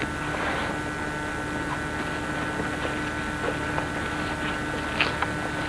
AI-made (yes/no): no